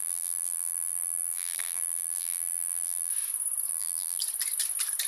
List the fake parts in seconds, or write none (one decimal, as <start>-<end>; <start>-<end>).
0.0-3.1; 3.7-4.2